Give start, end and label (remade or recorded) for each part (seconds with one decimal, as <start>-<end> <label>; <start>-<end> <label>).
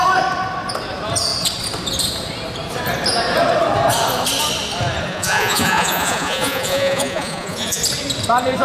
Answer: 0.0-5.1 recorded; 5.1-7.8 remade; 7.8-8.6 recorded